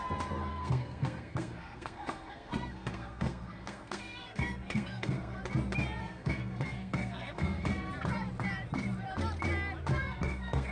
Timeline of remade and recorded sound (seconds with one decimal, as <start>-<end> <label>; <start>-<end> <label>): 0.0-0.5 recorded; 0.5-5.4 remade; 5.4-6.0 recorded; 6.0-7.9 remade; 7.9-9.9 recorded; 9.9-10.7 remade